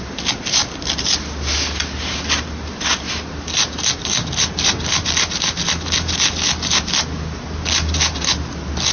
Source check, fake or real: real